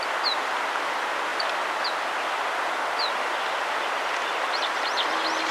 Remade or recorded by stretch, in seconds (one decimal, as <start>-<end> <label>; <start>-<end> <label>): 0.0-5.5 recorded